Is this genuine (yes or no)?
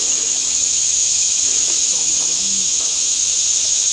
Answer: no